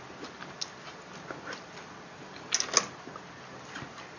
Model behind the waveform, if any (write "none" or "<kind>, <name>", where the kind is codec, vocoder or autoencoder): none